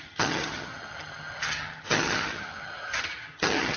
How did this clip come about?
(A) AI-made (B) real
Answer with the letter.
A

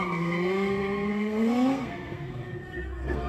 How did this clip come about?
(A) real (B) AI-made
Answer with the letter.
B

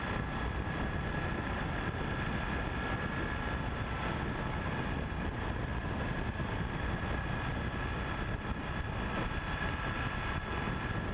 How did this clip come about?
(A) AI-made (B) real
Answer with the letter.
B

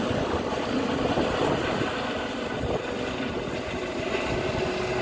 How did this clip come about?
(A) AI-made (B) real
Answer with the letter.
A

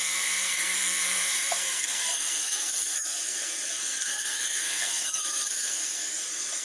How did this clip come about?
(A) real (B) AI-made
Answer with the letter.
B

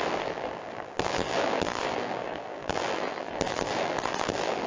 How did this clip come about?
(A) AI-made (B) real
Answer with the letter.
A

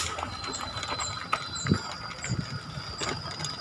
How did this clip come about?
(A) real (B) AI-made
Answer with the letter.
A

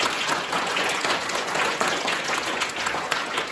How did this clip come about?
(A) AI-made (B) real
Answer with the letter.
A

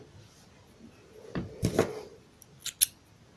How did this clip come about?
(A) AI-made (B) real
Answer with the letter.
B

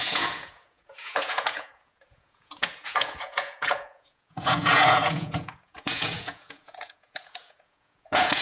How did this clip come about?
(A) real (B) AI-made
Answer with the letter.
B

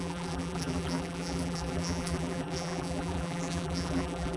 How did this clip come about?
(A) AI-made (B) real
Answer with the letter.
A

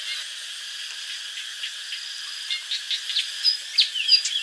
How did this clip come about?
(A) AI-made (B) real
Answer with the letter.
B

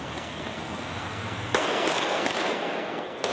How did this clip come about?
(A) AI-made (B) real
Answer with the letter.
A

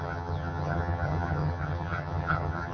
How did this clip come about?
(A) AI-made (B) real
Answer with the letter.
A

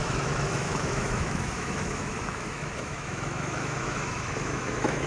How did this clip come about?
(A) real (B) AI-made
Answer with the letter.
B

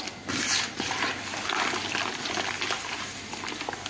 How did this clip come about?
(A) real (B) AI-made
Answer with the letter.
A